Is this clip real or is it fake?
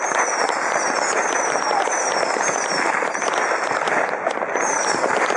fake